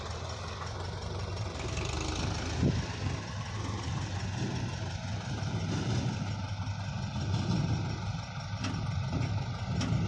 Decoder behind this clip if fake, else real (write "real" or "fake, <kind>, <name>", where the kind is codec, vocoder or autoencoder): real